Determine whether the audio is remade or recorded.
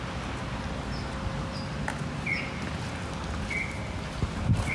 recorded